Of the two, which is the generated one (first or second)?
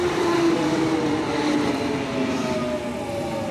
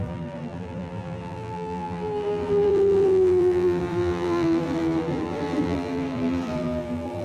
second